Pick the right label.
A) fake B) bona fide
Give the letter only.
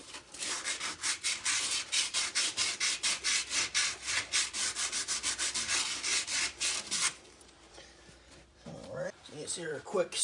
A